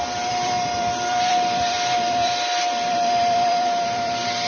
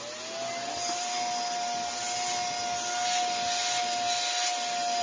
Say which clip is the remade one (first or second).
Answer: first